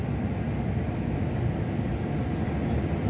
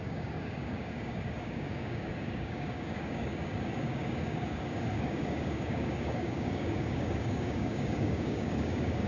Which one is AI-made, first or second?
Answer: second